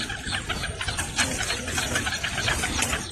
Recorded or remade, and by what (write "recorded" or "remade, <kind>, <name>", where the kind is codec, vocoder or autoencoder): remade, vocoder, BigVGAN v2